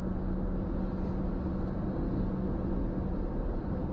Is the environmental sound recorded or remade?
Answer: recorded